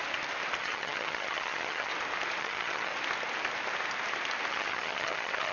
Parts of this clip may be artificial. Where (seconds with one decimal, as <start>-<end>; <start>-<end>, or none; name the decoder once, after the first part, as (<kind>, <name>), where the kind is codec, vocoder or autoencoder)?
0.6-1.9 (vocoder, HiFi-GAN); 2.4-2.9; 4.5-5.5